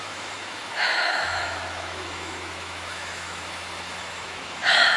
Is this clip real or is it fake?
fake